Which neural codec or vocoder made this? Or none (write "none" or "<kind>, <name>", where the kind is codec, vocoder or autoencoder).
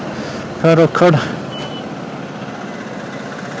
none